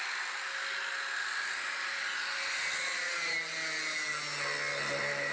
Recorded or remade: recorded